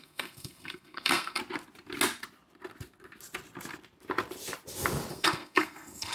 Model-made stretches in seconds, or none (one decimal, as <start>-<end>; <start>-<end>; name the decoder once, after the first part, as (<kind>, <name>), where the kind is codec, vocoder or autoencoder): 0.0-1.4 (codec, SNAC); 5.1-6.1